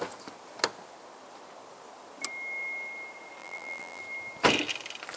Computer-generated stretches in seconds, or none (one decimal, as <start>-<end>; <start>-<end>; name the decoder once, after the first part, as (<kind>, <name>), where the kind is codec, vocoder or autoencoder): 3.4-4.0 (vocoder, BigVGAN v2)